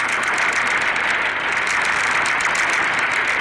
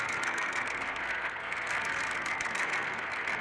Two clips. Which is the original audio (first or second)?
first